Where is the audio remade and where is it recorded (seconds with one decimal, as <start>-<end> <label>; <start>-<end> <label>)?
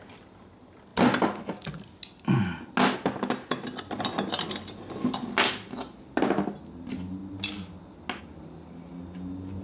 0.0-9.6 recorded